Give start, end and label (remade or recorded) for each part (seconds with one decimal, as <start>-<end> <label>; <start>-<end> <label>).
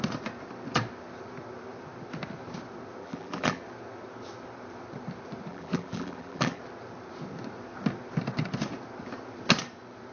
0.0-3.0 recorded; 3.0-3.6 remade; 3.6-5.5 recorded; 5.5-6.6 remade; 6.6-10.1 recorded